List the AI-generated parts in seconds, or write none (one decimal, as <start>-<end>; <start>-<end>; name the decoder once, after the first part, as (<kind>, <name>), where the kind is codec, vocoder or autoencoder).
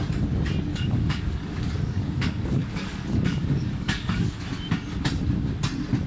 0.7-4.4 (codec, DAC)